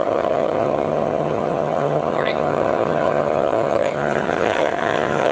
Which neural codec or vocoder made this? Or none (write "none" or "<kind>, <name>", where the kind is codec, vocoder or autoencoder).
vocoder, HiFi-GAN